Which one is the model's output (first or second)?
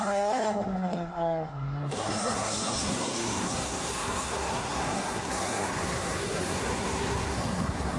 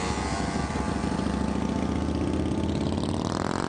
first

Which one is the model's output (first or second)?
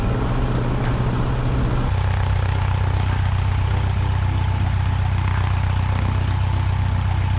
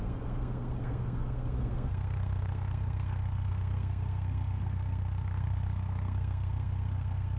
second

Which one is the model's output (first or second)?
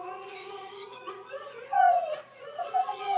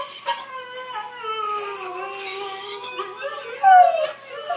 first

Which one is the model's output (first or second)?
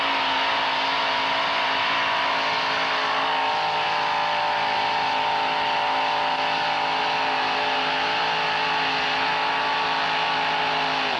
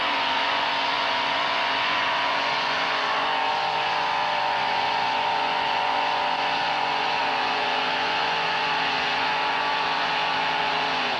second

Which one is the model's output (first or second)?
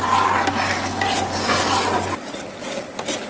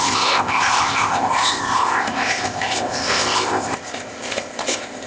second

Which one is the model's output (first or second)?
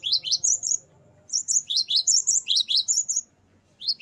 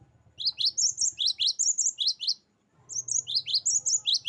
first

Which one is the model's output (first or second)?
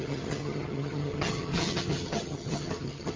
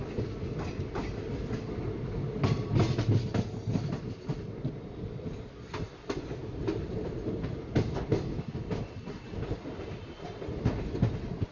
first